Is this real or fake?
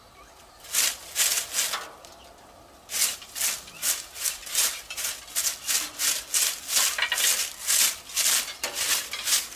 real